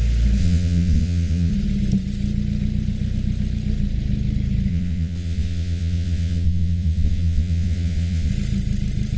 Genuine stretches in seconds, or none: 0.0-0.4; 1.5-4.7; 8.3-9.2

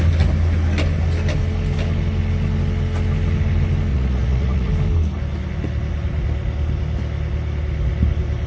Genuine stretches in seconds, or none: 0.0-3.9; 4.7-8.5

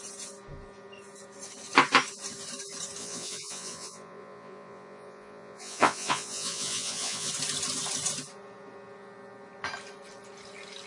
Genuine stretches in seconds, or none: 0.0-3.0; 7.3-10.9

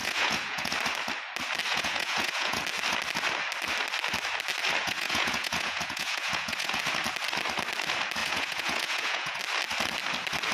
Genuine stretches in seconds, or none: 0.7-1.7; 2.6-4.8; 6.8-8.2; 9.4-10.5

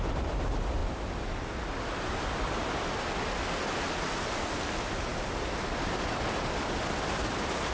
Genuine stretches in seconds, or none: 0.0-7.7

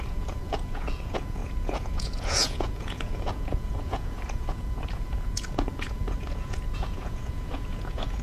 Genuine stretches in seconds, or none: none

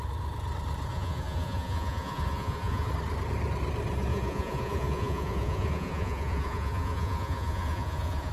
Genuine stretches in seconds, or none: 0.0-0.9; 2.9-4.1